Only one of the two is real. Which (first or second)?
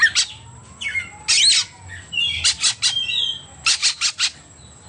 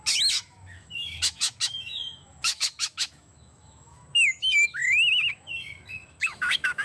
first